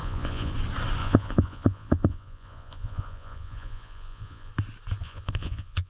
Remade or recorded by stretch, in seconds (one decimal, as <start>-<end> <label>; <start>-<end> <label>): 0.0-0.5 remade; 0.5-1.0 recorded; 1.0-4.5 remade; 4.5-5.0 recorded; 5.0-5.9 remade